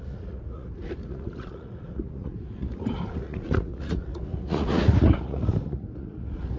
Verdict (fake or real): fake